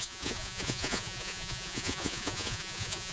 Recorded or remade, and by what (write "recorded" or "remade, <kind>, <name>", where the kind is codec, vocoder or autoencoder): remade, vocoder, Vocos